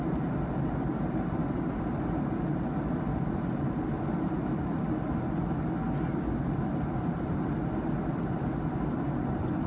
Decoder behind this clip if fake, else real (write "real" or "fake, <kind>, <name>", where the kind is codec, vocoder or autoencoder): real